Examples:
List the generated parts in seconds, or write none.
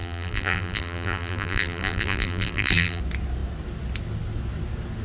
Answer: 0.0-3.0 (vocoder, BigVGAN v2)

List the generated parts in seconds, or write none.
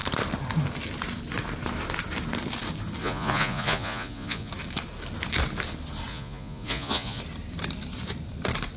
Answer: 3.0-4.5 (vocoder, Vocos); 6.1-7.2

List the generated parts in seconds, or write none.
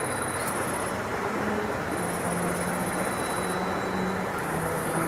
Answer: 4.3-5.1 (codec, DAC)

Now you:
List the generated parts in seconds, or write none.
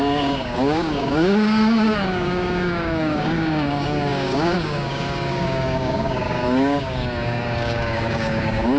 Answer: 0.0-8.8 (codec, DAC)